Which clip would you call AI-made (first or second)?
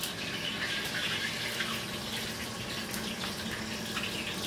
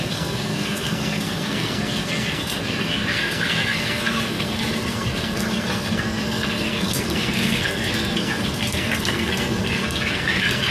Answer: second